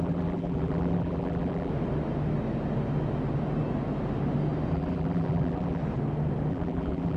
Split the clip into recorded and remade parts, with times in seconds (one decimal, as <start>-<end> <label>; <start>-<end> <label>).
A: 0.0-1.7 remade; 1.7-4.7 recorded; 4.7-5.8 remade; 5.8-6.5 recorded; 6.5-7.2 remade